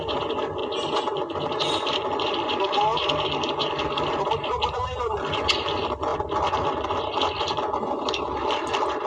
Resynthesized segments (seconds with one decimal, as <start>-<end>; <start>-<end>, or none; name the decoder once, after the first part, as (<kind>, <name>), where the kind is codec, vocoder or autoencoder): none